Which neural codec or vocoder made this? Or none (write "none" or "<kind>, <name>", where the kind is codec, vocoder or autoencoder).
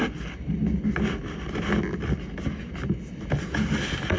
none